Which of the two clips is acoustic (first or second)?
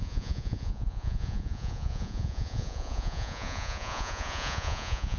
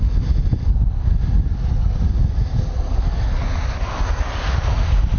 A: second